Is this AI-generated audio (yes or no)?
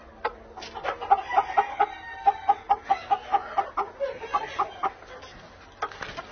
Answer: no